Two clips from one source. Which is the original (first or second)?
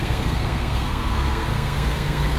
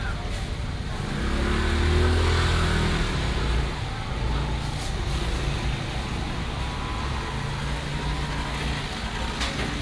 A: second